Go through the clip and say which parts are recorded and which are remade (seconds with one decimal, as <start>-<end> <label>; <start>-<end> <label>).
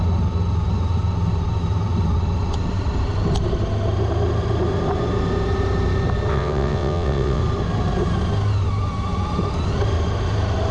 0.0-6.3 recorded; 6.3-7.4 remade; 7.4-10.7 recorded